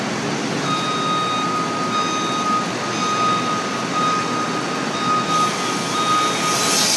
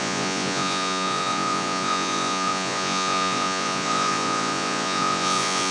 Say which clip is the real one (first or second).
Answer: first